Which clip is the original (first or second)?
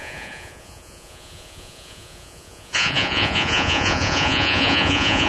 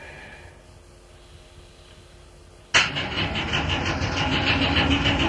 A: second